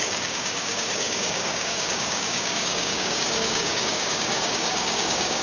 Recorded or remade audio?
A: remade